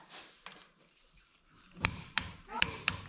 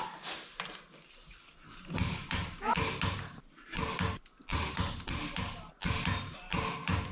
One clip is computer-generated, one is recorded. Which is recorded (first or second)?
second